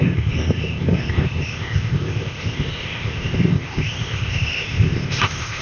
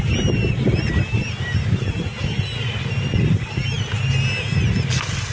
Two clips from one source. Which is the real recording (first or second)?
second